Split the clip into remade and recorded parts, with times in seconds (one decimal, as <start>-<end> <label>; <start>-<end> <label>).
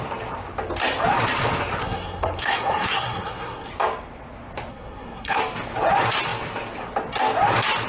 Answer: 0.0-1.8 recorded; 1.8-3.7 remade; 3.7-4.7 recorded; 4.7-5.4 remade; 5.4-7.9 recorded